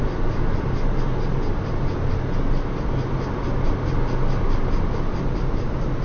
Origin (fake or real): real